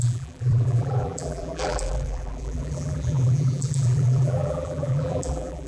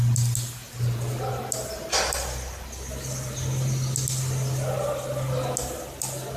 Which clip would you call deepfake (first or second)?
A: first